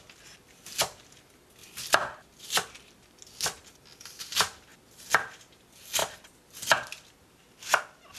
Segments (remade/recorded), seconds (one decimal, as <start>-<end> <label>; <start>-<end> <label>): 0.0-8.2 recorded